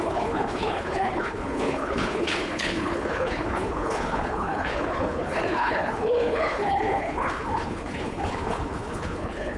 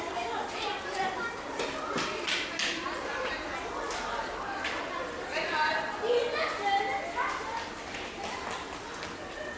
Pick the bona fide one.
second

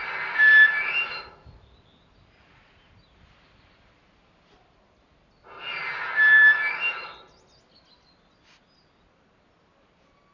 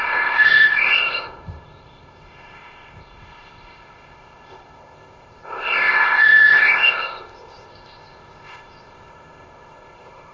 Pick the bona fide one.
first